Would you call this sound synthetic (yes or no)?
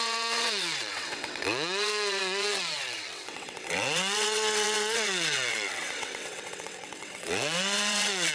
yes